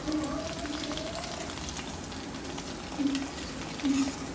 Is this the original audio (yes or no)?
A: yes